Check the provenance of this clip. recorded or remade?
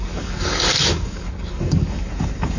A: remade